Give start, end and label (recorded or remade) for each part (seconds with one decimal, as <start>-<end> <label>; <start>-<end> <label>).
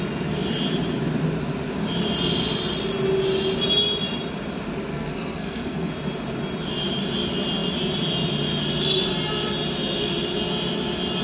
0.0-4.9 recorded; 4.9-5.9 remade; 5.9-11.2 recorded